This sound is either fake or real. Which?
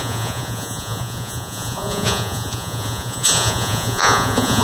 fake